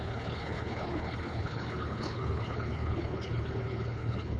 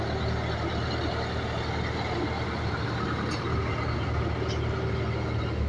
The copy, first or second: first